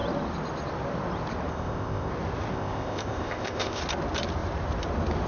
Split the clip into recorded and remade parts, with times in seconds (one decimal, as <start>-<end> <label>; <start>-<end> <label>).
0.0-1.5 recorded; 1.5-2.1 remade; 2.1-2.5 recorded; 2.5-3.8 remade; 3.8-5.3 recorded